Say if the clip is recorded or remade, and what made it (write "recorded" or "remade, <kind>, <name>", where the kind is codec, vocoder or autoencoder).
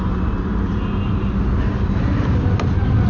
recorded